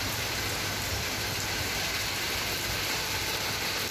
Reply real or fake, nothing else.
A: fake